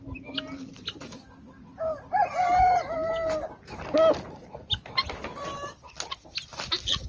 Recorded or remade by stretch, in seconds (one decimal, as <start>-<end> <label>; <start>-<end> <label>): 0.0-7.1 recorded